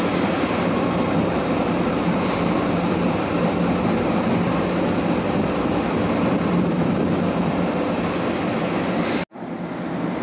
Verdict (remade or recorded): recorded